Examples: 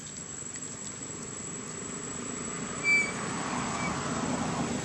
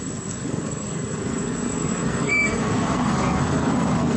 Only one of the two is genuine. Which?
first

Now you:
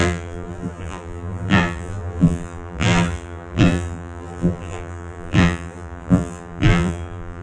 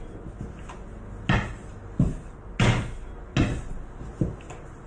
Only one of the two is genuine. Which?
second